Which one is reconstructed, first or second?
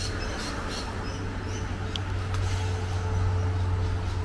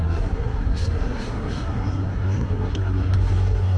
second